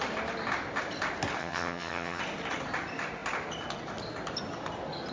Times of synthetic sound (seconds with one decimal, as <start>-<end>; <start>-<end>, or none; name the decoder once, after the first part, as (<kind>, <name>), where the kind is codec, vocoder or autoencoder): 1.4-2.2 (vocoder, HiFi-GAN)